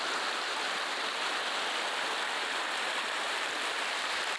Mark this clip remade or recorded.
recorded